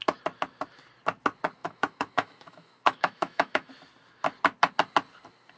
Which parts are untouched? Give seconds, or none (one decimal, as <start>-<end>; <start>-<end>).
0.0-1.6; 3.7-5.6